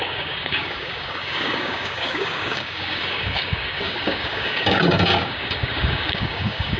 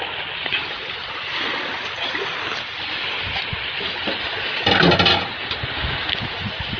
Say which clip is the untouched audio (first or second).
second